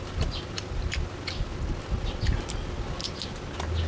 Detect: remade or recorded recorded